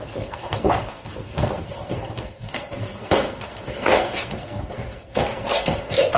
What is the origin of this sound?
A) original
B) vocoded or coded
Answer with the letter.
B